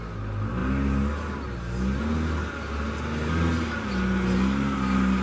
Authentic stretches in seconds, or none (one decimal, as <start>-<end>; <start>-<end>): 0.0-5.2